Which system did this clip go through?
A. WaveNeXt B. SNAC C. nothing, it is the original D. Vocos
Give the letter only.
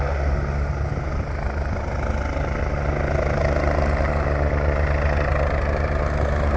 C